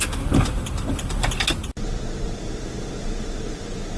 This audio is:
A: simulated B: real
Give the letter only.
B